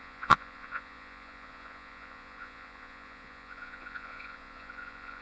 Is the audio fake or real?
fake